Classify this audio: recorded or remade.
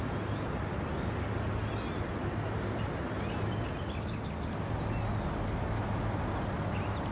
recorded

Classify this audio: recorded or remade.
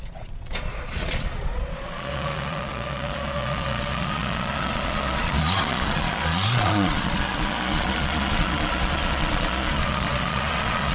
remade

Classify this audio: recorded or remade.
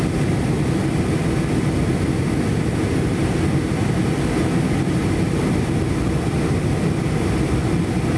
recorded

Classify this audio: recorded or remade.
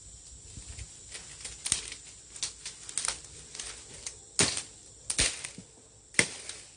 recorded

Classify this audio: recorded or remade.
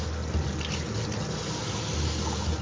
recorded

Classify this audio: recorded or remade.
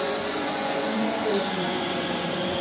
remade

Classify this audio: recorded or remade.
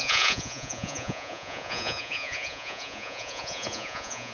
remade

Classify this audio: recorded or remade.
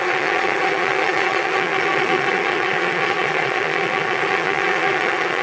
remade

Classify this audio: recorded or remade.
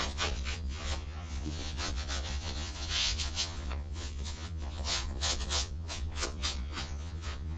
remade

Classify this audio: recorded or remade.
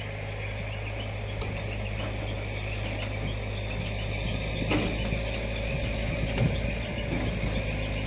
recorded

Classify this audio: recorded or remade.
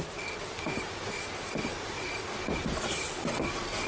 recorded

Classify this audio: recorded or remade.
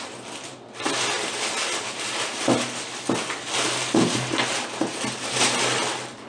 recorded